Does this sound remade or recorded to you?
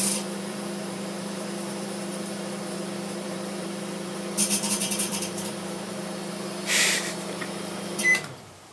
remade